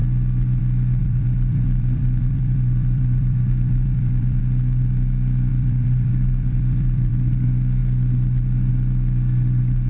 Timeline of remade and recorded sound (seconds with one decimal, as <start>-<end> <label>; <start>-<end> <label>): 0.0-1.0 recorded; 1.0-4.4 remade; 4.4-5.5 recorded; 5.5-7.2 remade; 7.2-9.9 recorded